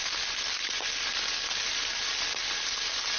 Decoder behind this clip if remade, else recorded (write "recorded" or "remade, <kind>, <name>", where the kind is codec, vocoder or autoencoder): recorded